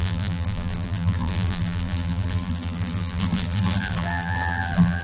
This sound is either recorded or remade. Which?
remade